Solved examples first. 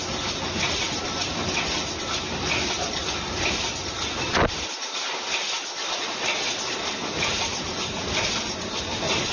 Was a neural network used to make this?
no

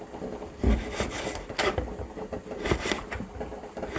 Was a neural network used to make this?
no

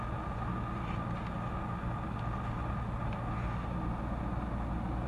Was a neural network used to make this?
no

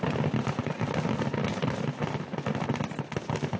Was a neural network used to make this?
no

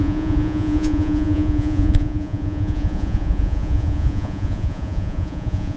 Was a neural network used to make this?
yes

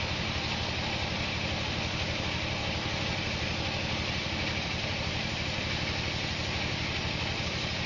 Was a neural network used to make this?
yes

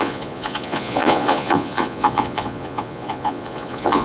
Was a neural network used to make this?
yes